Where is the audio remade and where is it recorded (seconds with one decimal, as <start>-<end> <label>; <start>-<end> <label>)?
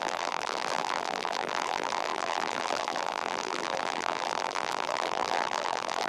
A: 0.0-6.1 remade